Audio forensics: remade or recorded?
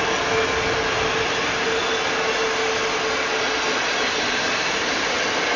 recorded